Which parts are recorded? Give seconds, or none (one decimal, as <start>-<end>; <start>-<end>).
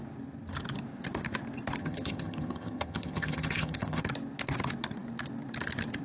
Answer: 0.0-1.8; 4.0-6.0